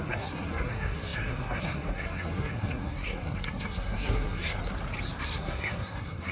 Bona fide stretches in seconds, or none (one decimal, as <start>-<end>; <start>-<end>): 4.6-5.2

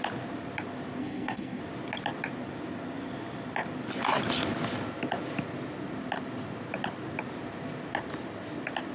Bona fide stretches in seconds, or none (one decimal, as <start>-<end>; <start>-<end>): 0.0-1.0; 1.6-8.9

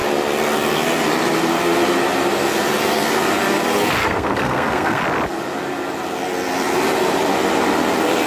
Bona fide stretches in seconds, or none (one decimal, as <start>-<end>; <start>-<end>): 0.0-4.0; 5.0-8.3

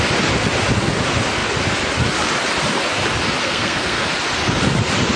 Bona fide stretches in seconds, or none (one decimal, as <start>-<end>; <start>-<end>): 0.0-3.4; 4.0-5.2

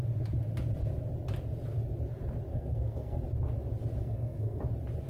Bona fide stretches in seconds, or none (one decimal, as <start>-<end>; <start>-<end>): 0.0-2.5; 3.2-4.0; 4.6-5.1

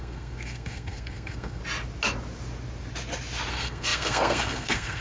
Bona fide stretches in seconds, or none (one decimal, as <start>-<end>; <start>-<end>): 1.6-3.5

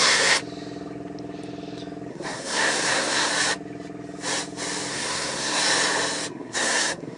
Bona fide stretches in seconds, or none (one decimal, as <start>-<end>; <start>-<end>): 0.4-2.1; 3.3-4.9; 5.6-6.3

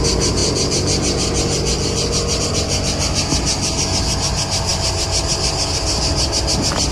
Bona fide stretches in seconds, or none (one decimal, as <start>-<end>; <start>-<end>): 0.0-6.9